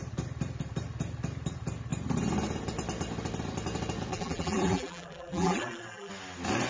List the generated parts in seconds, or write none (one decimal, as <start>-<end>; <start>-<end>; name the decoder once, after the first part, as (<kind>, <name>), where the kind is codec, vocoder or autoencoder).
4.1-6.1 (vocoder, BigVGAN v2)